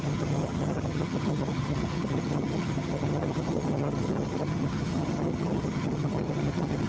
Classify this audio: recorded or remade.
remade